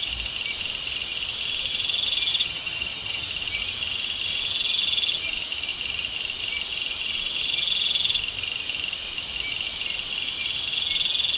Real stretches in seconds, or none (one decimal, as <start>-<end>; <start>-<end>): 0.0-2.3; 3.3-11.4